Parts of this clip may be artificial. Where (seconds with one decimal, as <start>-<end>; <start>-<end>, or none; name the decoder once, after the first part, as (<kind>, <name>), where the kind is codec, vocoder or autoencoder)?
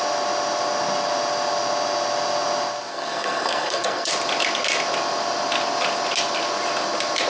2.9-4.1 (codec, SNAC)